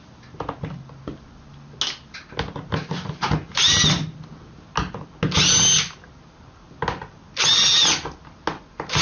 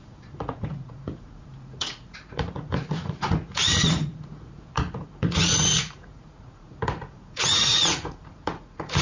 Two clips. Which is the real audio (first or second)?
first